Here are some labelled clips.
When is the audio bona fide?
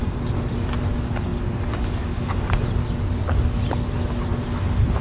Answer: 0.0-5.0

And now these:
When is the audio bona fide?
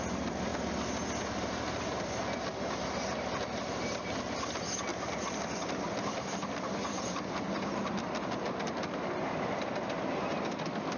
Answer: 0.0-4.9; 7.0-11.0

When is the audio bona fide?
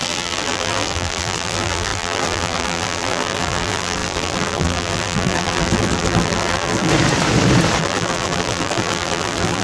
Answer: 6.9-7.8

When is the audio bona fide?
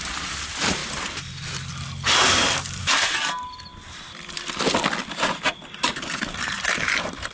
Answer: 0.8-2.8; 3.7-5.9